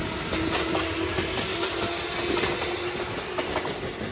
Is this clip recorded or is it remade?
recorded